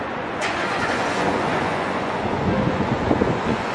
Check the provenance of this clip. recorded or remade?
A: remade